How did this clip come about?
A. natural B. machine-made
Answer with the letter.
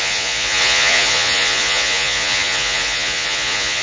B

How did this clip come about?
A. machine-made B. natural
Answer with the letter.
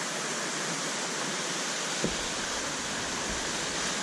B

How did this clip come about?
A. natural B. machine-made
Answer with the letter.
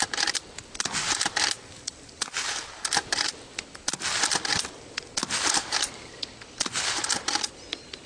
A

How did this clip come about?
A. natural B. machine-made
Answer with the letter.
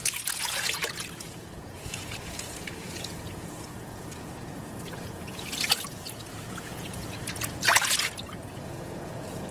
B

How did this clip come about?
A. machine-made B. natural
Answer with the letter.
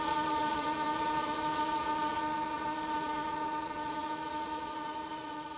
A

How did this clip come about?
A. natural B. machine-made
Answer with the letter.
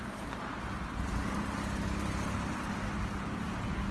A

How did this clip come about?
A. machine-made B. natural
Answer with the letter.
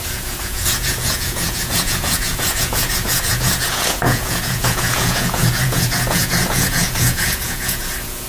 A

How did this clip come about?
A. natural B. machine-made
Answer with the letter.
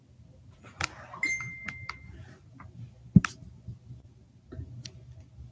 A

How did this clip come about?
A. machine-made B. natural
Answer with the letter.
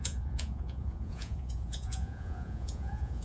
A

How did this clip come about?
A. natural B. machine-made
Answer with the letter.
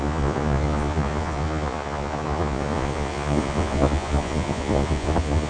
B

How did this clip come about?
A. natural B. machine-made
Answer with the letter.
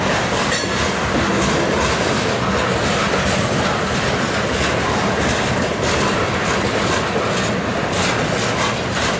A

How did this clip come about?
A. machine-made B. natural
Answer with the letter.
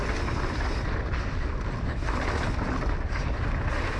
B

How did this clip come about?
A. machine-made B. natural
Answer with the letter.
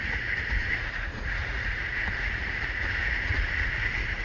A